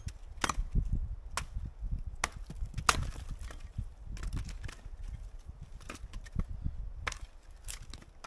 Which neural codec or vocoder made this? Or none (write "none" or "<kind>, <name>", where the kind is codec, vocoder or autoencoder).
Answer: none